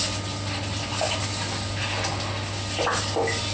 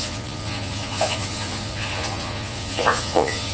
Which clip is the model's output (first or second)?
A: second